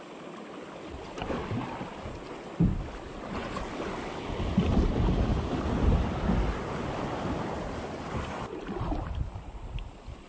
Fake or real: real